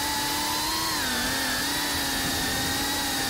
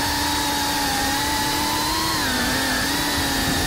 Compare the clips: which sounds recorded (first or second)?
first